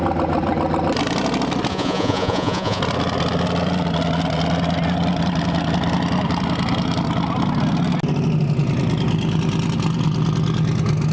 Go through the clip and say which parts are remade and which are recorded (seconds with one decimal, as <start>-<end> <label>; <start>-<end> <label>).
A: 0.0-1.7 recorded; 1.7-2.8 remade; 2.8-11.1 recorded